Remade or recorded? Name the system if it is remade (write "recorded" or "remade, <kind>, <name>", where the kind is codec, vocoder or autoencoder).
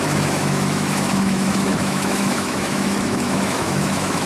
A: remade, autoencoder, DAC-VAE